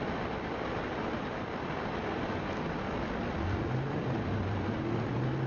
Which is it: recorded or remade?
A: recorded